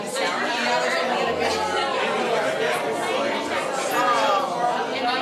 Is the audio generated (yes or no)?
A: no